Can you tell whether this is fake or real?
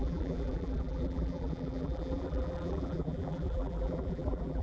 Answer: fake